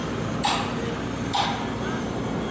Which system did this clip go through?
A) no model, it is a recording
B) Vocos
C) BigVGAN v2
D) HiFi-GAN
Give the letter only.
A